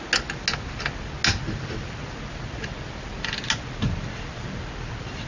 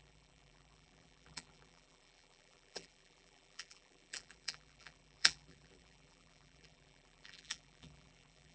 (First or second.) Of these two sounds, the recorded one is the first